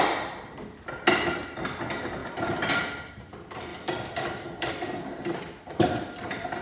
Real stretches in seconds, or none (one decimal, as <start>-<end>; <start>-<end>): 0.0-2.2; 3.1-3.7; 4.7-6.6